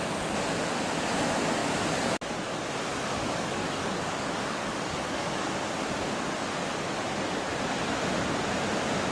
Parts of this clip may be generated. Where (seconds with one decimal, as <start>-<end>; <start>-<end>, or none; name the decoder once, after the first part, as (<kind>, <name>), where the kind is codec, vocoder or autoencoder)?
2.9-5.5 (codec, DAC)